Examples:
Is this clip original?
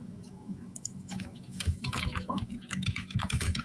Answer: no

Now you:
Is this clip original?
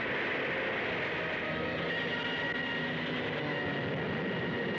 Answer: yes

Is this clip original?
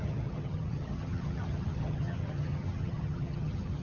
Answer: no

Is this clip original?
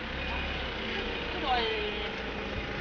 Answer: yes